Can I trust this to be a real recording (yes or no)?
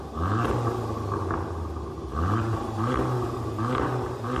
yes